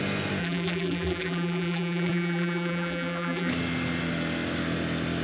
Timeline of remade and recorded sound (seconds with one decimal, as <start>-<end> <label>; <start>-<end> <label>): 0.0-0.4 recorded; 0.4-3.5 remade; 3.5-5.2 recorded